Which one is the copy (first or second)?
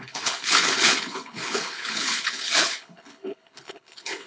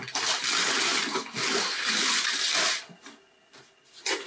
first